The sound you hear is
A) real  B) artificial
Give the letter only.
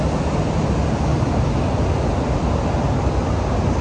A